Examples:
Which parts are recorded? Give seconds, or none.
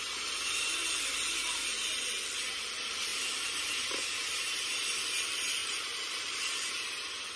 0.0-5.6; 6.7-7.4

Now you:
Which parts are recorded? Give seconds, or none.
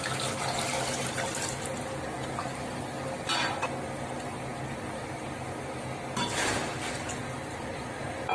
0.0-8.3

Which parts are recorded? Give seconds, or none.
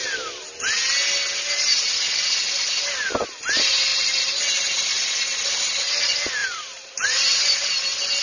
0.0-3.9; 4.4-6.4; 7.4-8.2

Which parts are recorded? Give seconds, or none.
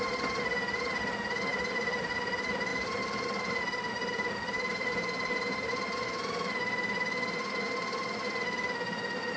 0.0-1.5; 2.3-2.7; 5.7-9.4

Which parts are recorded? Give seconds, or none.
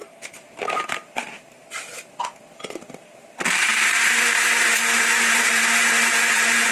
1.6-2.8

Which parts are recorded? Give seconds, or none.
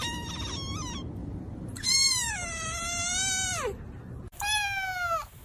0.0-1.2; 2.3-5.4